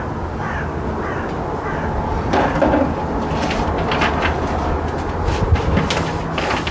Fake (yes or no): no